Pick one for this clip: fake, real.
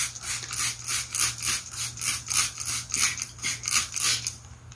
real